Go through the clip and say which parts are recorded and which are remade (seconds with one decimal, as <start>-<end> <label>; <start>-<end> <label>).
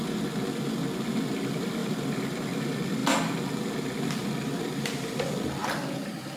0.0-1.8 recorded; 1.8-2.6 remade; 2.6-4.2 recorded; 4.2-4.7 remade; 4.7-5.6 recorded; 5.6-6.4 remade